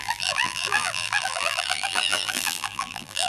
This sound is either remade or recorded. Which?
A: remade